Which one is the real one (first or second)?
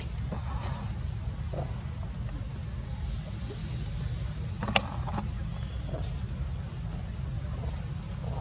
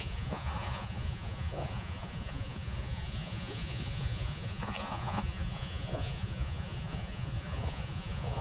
first